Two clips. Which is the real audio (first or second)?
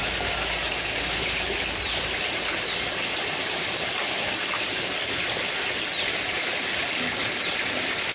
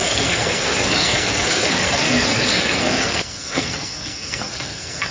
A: first